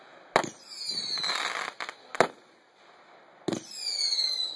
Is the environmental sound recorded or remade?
recorded